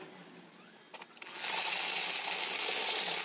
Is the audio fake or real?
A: real